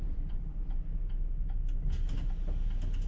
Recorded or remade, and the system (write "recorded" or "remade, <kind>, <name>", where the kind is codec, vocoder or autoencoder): recorded